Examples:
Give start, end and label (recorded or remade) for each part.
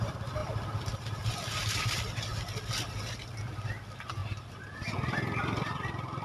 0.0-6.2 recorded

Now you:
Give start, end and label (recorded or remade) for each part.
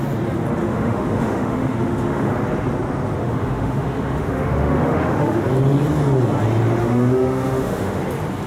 0.0-0.6 recorded; 0.6-2.3 remade; 2.3-3.2 recorded; 3.2-5.4 remade; 5.4-6.8 recorded; 6.8-8.0 remade; 8.0-8.5 recorded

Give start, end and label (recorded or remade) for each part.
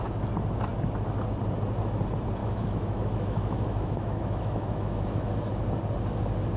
0.0-2.4 recorded; 2.4-5.3 remade; 5.3-6.6 recorded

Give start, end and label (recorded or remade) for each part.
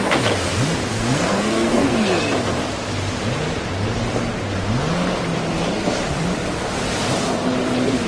0.0-0.9 recorded; 0.9-2.2 remade; 2.2-8.1 recorded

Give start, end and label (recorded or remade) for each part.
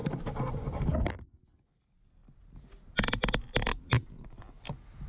0.0-0.8 remade; 0.8-3.7 recorded; 3.7-4.4 remade; 4.4-5.1 recorded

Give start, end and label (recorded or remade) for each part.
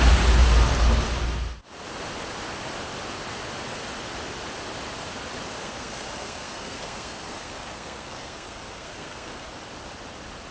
0.0-5.6 recorded; 5.6-9.5 remade; 9.5-10.5 recorded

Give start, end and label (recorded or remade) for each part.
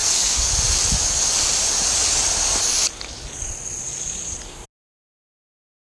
0.0-0.5 remade; 0.5-5.9 recorded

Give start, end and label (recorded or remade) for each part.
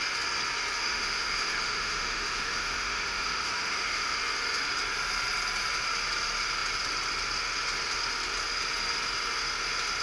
0.0-0.8 recorded; 0.8-4.2 remade; 4.2-10.0 recorded